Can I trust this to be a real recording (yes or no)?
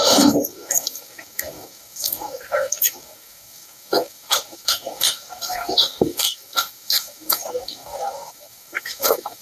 no